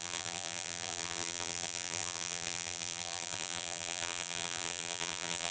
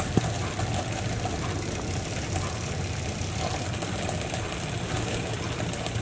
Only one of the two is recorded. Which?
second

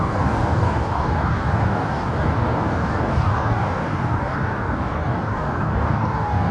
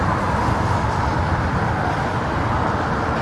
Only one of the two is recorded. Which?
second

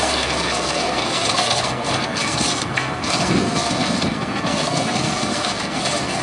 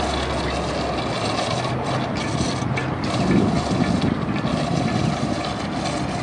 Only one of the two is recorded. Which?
second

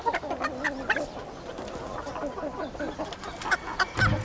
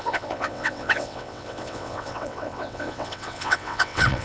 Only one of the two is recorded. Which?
first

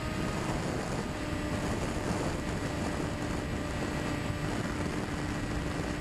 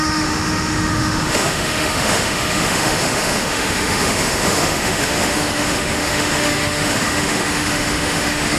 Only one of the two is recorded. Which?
first